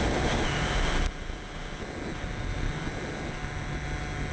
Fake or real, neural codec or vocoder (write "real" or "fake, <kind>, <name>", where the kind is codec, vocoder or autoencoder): real